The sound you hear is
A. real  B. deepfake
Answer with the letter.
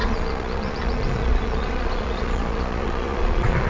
B